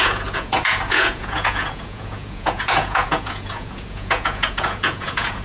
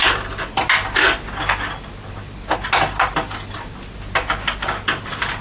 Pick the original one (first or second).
second